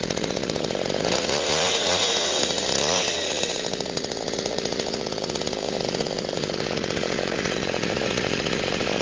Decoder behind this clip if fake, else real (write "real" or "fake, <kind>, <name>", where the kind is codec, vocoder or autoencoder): fake, vocoder, Vocos